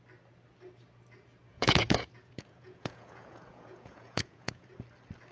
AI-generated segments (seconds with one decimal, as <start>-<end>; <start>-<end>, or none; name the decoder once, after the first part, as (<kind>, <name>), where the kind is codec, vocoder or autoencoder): 1.5-4.7 (vocoder, Vocos)